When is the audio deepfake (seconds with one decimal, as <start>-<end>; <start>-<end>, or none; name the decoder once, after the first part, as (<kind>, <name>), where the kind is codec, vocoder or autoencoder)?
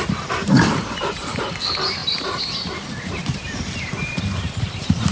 0.0-5.1 (vocoder, BigVGAN v2)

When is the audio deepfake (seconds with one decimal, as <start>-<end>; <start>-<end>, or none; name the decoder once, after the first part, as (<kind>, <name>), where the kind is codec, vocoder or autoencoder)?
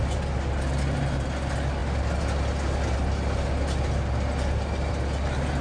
none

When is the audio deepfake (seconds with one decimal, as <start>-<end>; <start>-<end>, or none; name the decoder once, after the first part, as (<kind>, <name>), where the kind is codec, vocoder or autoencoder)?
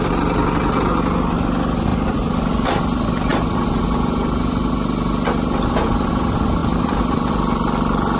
1.9-2.5 (vocoder, BigVGAN v2); 6.6-7.3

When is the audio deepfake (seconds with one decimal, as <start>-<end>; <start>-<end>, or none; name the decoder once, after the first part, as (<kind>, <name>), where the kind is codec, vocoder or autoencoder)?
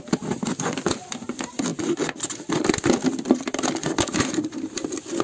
0.0-1.7 (vocoder, BigVGAN v2); 2.3-5.2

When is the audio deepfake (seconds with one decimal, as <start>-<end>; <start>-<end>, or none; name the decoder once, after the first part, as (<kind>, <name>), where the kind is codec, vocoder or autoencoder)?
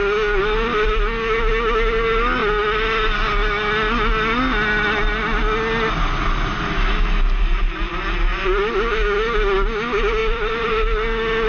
10.2-10.7 (vocoder, BigVGAN v2)